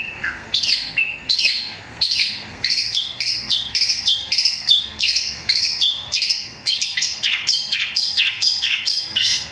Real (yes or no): no